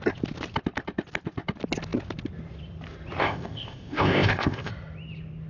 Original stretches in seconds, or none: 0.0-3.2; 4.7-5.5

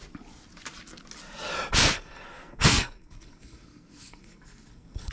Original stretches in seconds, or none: 0.0-1.8

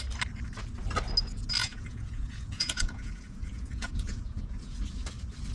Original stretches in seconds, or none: 0.0-1.6; 4.8-5.5

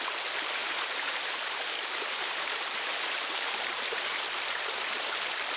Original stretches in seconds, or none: 0.0-0.6; 4.0-5.6

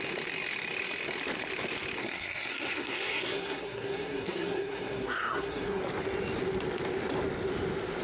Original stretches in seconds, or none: 0.0-2.0; 5.8-8.0